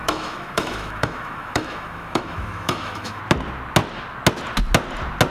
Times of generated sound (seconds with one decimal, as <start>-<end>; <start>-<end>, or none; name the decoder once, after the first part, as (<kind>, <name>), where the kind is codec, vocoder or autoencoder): 0.0-3.2 (autoencoder, DAC-VAE)

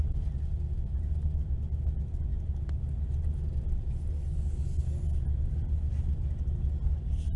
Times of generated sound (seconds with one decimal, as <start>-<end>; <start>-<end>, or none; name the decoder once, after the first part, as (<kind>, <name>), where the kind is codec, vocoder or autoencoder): none

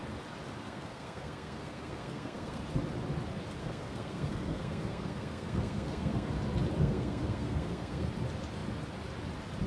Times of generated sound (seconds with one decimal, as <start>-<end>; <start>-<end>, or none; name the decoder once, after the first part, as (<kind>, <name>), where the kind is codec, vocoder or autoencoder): 0.6-2.6 (codec, SNAC); 3.6-6.3; 6.8-8.1

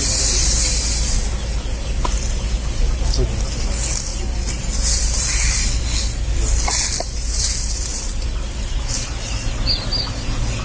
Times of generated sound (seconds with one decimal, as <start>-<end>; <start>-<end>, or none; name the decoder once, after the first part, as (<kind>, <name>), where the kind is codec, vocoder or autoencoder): none

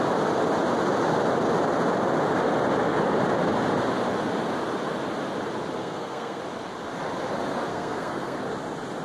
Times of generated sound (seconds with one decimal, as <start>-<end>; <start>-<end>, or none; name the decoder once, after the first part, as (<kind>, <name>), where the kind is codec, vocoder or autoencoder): 5.8-6.4 (codec, SNAC); 7.7-8.4

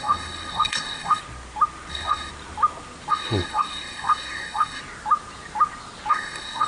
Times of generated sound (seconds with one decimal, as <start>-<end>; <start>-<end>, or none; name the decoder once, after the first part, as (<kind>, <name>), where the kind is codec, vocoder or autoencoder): 0.0-1.2 (codec, SNAC); 1.9-2.3; 3.1-4.8; 6.1-6.7

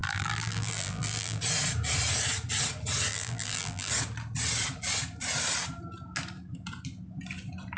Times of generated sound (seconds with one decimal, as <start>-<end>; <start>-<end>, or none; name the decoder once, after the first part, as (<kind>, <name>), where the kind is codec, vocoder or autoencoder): 0.0-1.4 (vocoder, BigVGAN v2); 3.1-3.9

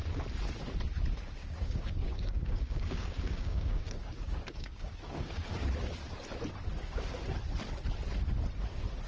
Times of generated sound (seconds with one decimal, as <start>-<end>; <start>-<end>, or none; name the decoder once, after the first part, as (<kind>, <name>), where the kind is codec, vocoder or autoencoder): 1.4-5.5 (codec, DAC)